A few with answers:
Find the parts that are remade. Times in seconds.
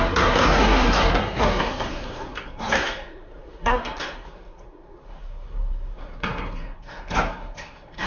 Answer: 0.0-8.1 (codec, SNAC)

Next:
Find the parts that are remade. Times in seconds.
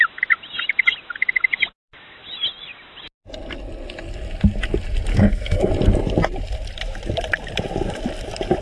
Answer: 5.1-5.7 (codec, SNAC)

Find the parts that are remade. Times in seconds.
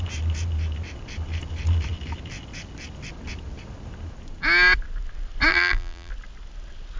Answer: 5.5-6.1 (vocoder, BigVGAN v2)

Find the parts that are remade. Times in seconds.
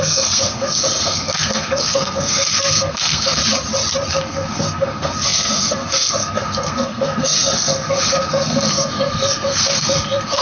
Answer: 0.0-3.4 (codec, SNAC); 4.1-10.4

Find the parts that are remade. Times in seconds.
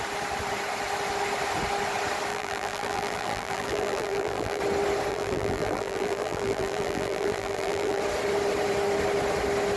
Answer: 2.3-4.6 (vocoder, BigVGAN v2); 5.1-8.0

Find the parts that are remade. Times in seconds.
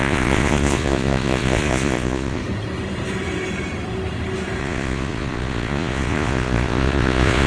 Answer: 0.0-2.4 (vocoder, Vocos); 4.6-7.5